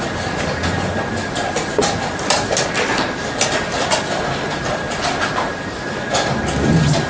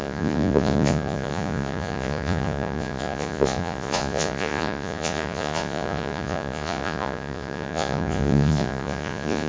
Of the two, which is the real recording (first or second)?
first